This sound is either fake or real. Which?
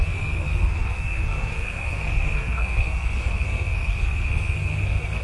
fake